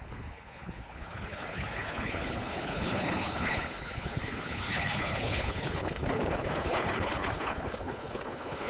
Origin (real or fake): fake